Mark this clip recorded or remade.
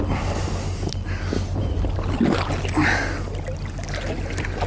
recorded